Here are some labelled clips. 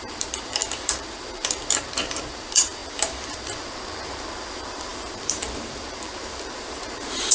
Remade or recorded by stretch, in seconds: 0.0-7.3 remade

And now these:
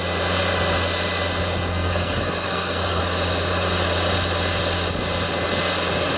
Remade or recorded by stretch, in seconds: 0.0-1.7 recorded; 1.7-3.0 remade; 3.0-6.2 recorded